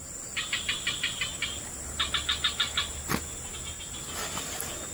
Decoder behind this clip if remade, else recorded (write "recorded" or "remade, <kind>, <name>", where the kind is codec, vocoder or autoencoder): recorded